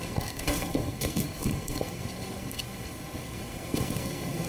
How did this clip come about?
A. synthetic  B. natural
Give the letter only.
A